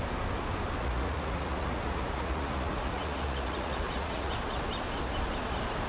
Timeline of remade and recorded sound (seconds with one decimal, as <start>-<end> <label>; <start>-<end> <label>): 0.0-0.8 recorded; 0.8-4.3 remade; 4.3-5.9 recorded